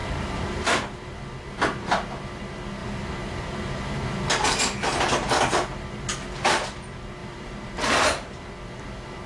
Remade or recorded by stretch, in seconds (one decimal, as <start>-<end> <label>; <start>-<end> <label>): 0.0-1.1 remade; 1.1-2.8 recorded; 2.8-4.6 remade; 4.6-7.2 recorded; 7.2-8.5 remade; 8.5-9.3 recorded